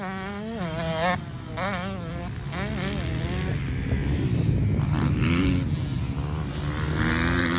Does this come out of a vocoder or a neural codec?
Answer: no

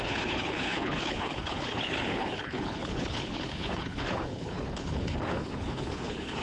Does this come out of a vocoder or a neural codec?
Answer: yes